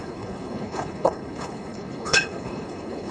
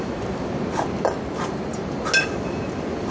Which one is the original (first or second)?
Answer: second